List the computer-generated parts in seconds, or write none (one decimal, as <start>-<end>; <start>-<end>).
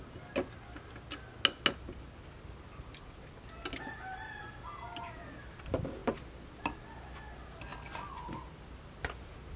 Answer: 6.0-6.6; 7.7-8.7